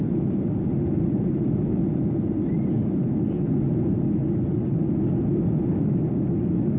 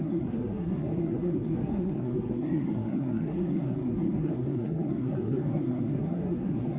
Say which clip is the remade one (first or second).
second